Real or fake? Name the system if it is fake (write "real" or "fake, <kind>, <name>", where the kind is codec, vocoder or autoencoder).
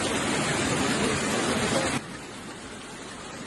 real